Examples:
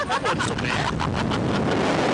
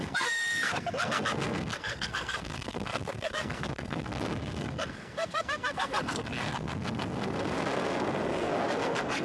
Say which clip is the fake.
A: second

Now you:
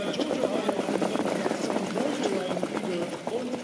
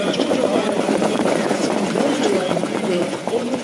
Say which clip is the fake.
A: second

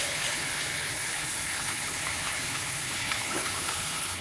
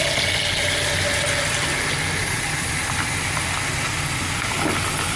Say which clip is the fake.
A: first